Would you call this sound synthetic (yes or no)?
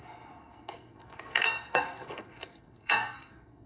yes